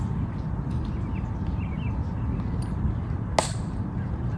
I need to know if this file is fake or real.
real